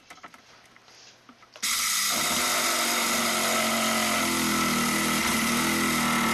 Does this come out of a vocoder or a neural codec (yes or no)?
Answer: no